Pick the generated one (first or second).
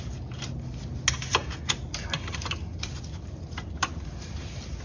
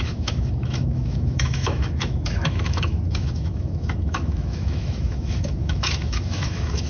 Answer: second